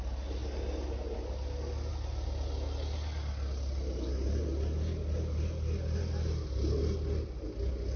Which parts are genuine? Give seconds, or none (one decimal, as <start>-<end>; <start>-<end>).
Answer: 0.0-8.0